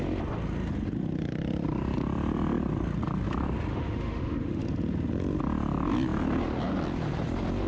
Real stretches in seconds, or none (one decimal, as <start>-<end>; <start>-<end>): 0.0-3.7; 4.6-7.7